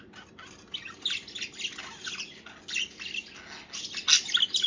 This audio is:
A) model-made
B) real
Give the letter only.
B